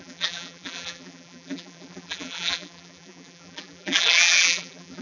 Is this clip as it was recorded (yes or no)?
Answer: no